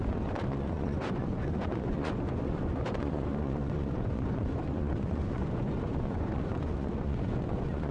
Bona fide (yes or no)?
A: no